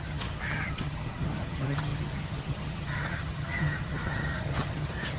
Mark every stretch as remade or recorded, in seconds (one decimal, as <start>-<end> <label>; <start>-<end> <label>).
0.0-5.2 remade